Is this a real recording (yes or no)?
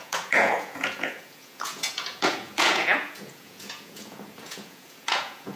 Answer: no